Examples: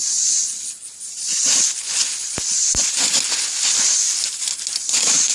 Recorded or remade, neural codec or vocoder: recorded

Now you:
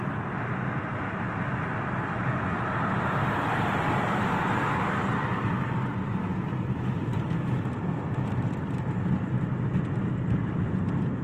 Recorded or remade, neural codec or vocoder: recorded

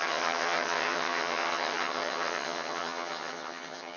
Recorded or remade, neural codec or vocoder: remade, vocoder, HiFi-GAN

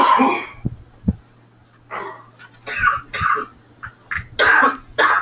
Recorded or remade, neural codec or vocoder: recorded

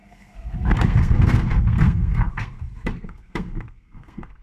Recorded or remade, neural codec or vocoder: remade, codec, SNAC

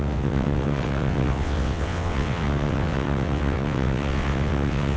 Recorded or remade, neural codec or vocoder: remade, vocoder, WaveNeXt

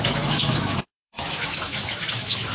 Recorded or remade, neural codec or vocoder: remade, autoencoder, DAC-VAE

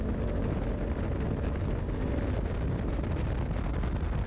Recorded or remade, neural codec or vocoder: recorded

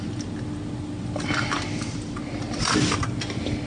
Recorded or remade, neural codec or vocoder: recorded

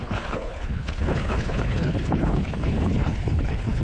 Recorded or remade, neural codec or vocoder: remade, codec, HILCodec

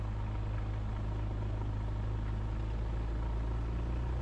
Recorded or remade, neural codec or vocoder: recorded